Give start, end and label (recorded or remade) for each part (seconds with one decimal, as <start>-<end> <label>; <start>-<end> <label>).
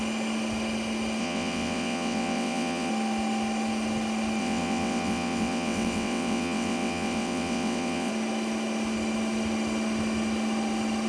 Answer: 0.0-1.2 recorded; 1.2-2.9 remade; 2.9-4.4 recorded; 4.4-8.1 remade; 8.1-11.1 recorded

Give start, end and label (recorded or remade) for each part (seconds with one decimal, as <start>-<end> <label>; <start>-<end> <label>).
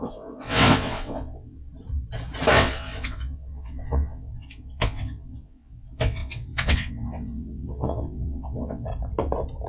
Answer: 0.0-1.7 remade; 1.7-2.5 recorded; 2.5-8.9 remade; 8.9-9.7 recorded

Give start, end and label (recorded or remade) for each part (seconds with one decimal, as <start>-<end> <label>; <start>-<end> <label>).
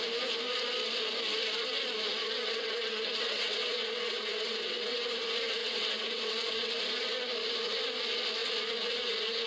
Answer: 0.0-2.2 recorded; 2.2-5.0 remade; 5.0-5.6 recorded; 5.6-6.7 remade; 6.7-9.5 recorded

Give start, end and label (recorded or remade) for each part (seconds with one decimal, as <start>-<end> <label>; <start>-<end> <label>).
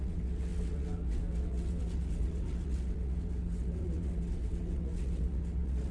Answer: 0.0-5.9 remade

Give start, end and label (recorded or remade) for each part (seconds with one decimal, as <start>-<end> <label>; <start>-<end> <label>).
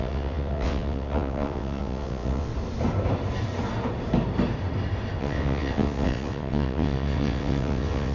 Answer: 0.0-2.5 remade; 2.5-5.2 recorded; 5.2-8.1 remade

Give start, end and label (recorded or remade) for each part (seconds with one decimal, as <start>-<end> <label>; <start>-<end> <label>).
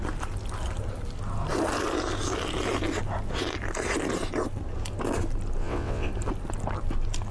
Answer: 0.0-5.6 recorded; 5.6-6.1 remade; 6.1-7.3 recorded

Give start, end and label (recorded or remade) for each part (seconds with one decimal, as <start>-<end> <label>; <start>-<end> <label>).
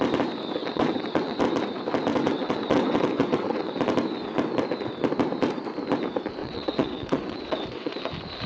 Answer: 0.0-0.6 recorded; 0.6-1.4 remade; 1.4-2.1 recorded; 2.1-3.7 remade; 3.7-6.4 recorded; 6.4-8.0 remade; 8.0-8.5 recorded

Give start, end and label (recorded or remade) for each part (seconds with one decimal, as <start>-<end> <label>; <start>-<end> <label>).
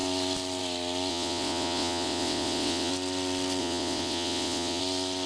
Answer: 0.0-1.1 recorded; 1.1-2.9 remade; 2.9-3.6 recorded; 3.6-4.8 remade; 4.8-5.3 recorded